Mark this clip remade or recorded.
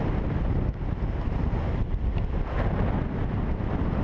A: recorded